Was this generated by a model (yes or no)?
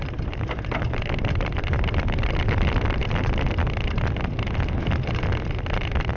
yes